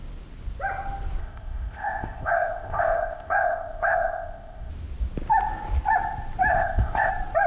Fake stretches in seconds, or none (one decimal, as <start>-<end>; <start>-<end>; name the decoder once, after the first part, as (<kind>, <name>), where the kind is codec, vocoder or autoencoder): 1.2-4.7 (codec, ZipCodec); 6.5-7.1